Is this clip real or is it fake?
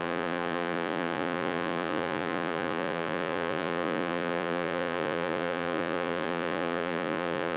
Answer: fake